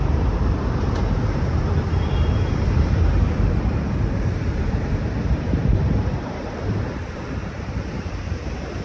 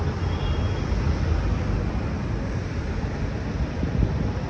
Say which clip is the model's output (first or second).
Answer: first